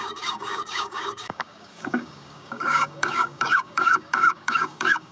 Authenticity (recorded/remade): remade